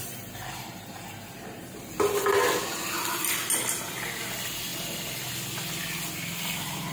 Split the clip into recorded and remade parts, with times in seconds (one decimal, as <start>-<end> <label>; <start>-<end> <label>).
0.0-6.9 recorded